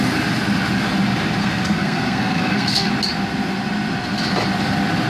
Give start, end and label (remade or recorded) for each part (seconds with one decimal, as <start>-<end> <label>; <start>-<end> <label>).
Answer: 0.0-1.4 recorded; 1.4-2.9 remade; 2.9-5.1 recorded